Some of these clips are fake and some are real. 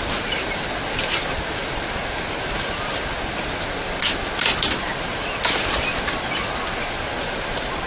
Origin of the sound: real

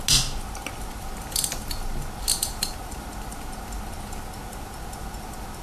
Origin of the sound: real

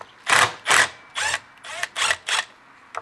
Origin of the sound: real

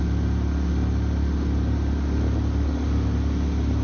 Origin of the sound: real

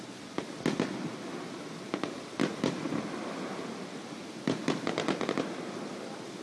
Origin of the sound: real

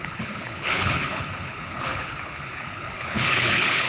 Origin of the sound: fake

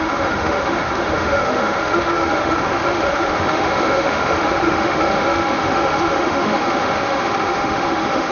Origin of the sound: fake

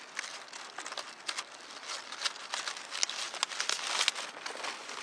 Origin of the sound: real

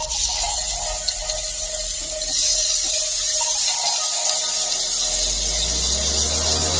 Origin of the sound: real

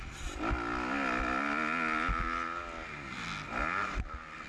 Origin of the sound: real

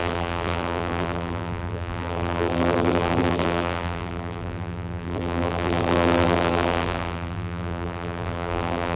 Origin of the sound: fake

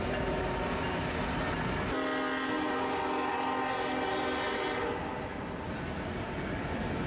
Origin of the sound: real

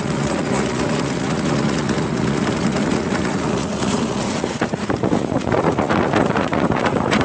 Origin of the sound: fake